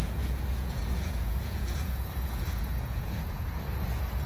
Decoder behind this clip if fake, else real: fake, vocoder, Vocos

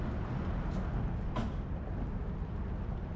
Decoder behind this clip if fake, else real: real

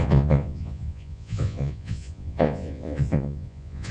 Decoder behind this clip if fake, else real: fake, vocoder, Vocos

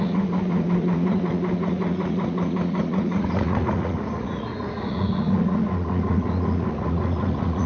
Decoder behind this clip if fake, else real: fake, vocoder, Vocos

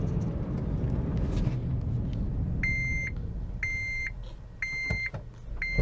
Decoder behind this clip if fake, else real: real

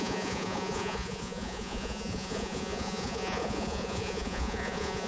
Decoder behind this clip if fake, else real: fake, vocoder, Vocos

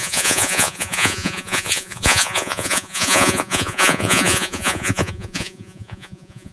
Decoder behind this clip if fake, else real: fake, vocoder, Vocos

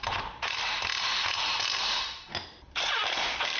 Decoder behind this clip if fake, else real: real